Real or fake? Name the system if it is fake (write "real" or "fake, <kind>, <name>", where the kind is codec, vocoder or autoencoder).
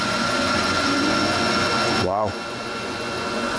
fake, vocoder, Vocos